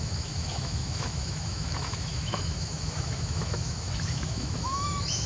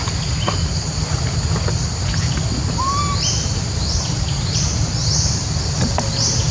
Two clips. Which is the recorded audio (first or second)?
second